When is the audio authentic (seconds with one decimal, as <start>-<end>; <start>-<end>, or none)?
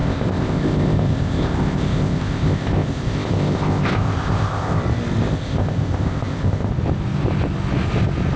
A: 4.8-5.3; 6.7-8.4